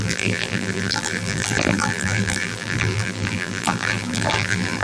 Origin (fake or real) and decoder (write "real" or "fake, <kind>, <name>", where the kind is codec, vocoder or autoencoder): fake, vocoder, BigVGAN v2